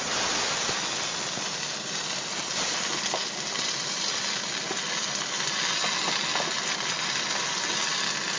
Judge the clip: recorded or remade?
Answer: recorded